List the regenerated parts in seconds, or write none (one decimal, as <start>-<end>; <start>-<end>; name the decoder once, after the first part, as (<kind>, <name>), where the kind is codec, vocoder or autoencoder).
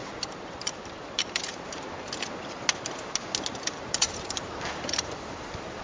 0.0-1.9 (vocoder, BigVGAN v2); 3.5-5.8